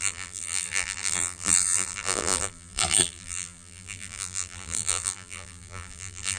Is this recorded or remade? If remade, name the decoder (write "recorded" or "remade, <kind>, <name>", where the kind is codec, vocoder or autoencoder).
remade, vocoder, BigVGAN v2